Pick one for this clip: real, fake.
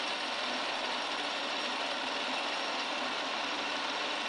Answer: real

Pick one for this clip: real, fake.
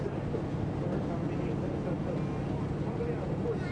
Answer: real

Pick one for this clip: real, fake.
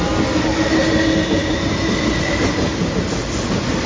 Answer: real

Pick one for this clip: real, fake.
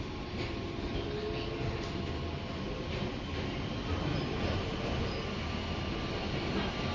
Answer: real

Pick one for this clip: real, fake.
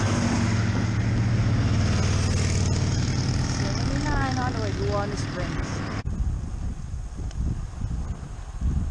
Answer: real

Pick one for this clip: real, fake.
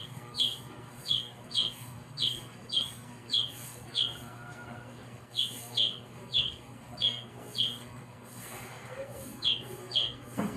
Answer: fake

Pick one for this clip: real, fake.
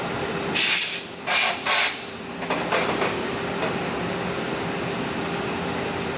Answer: real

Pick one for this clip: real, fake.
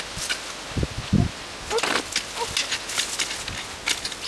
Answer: real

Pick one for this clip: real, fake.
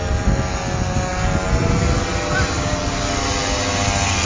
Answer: real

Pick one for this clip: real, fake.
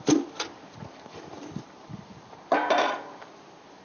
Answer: real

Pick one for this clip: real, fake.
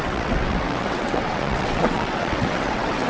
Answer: fake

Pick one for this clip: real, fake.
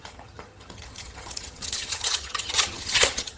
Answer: fake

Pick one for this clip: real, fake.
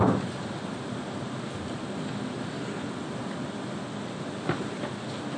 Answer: real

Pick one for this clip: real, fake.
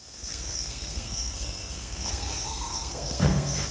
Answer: fake